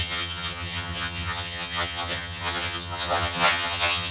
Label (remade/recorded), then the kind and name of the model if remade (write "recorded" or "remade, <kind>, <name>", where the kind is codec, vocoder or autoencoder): remade, vocoder, HiFi-GAN